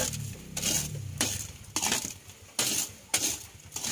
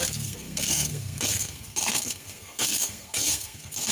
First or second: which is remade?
second